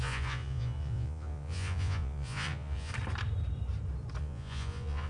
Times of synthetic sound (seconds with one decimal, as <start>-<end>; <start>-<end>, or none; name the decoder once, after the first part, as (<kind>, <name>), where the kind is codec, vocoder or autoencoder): 0.0-2.9 (vocoder, Vocos); 4.2-5.1